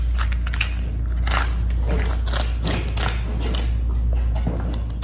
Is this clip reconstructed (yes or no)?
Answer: no